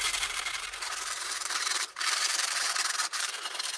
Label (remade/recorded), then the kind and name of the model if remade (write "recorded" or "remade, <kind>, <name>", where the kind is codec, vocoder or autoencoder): remade, vocoder, BigVGAN v2